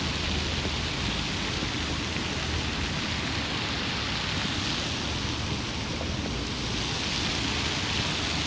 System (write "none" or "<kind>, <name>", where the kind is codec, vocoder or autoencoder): none